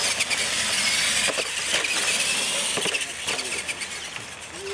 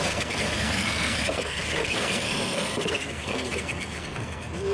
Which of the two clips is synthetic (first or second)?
second